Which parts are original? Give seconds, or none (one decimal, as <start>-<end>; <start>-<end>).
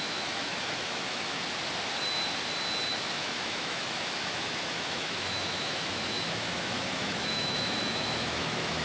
1.4-2.9